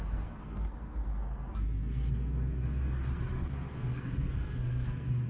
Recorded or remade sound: remade